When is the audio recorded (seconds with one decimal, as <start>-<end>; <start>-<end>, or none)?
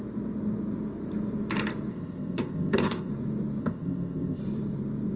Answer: 0.0-1.9; 3.1-3.6; 4.4-5.2